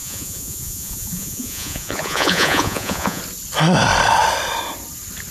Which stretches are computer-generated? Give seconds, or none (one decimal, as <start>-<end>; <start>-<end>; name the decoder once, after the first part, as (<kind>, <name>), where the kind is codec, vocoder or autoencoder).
0.0-3.2 (vocoder, Vocos)